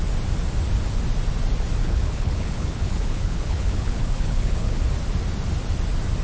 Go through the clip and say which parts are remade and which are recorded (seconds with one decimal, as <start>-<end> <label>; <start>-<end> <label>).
0.0-1.8 recorded; 1.8-4.8 remade; 4.8-6.2 recorded